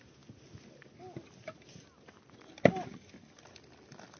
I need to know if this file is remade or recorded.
recorded